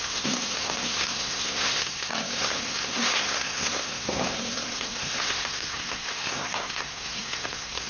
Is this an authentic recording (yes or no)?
no